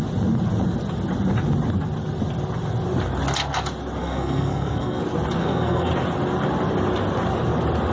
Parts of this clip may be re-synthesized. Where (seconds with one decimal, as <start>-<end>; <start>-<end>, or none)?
4.0-5.0; 5.4-5.9